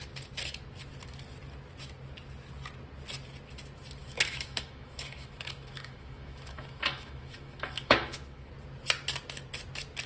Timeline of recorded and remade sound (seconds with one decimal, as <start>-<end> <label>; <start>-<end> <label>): 0.0-4.0 recorded; 4.0-8.5 remade; 8.5-10.1 recorded